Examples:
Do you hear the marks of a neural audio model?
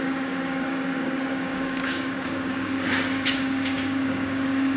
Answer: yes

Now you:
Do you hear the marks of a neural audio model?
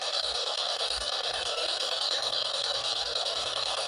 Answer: yes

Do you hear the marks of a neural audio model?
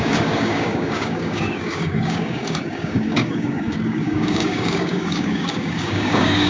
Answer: yes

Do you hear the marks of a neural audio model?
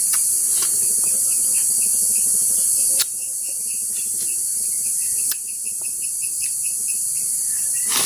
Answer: no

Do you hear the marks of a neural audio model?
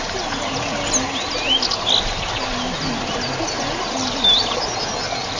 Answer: no